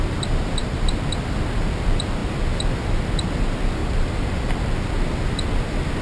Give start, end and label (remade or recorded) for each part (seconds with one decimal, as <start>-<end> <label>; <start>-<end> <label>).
0.0-3.8 recorded; 3.8-4.4 remade; 4.4-6.0 recorded